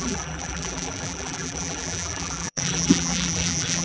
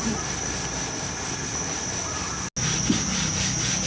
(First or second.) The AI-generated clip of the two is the first